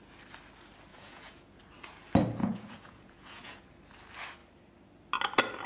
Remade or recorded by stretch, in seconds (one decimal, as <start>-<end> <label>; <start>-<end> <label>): 0.0-0.9 recorded; 0.9-1.6 remade; 1.6-2.4 recorded; 2.4-3.6 remade; 3.6-5.7 recorded